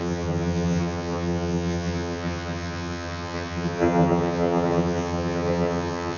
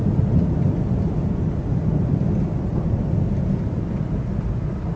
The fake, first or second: first